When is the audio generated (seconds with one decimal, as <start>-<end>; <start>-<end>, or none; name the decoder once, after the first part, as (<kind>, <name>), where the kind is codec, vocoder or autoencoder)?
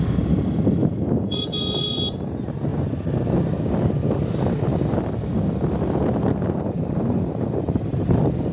0.8-2.0 (vocoder, Vocos)